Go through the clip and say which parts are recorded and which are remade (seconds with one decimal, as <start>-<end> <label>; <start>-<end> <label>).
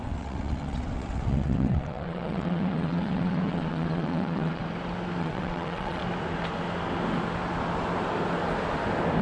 0.0-4.6 remade; 4.6-5.2 recorded; 5.2-6.0 remade; 6.0-9.2 recorded